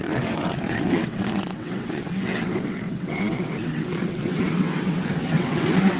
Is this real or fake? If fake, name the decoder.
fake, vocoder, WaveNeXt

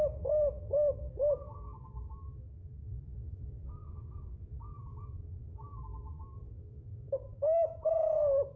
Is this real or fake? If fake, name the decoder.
fake, autoencoder, DAC-VAE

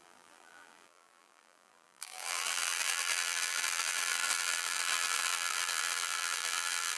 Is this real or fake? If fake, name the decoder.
fake, vocoder, BigVGAN v2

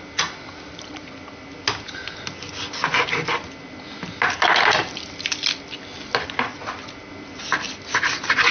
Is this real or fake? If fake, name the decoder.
real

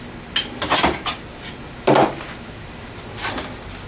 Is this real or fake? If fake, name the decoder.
real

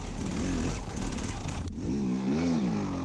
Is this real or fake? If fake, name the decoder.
real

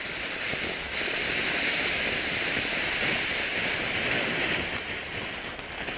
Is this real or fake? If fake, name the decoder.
real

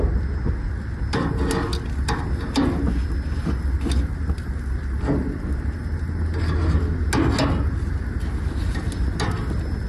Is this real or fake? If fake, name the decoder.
real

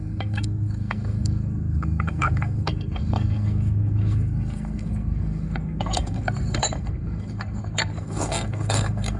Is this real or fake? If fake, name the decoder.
fake, codec, SNAC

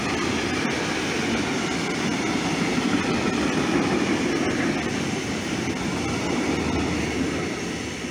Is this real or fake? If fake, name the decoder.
real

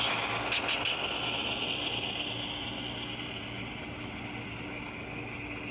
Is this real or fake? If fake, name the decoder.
real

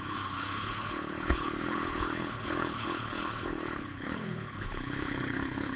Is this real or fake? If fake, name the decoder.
fake, codec, HILCodec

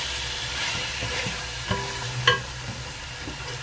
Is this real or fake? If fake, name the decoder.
real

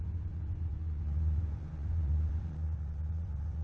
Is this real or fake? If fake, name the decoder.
fake, vocoder, Vocos